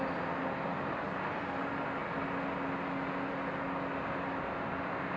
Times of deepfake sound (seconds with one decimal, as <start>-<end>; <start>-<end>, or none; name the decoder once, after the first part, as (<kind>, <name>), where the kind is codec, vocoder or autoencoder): 0.7-1.4 (vocoder, BigVGAN v2)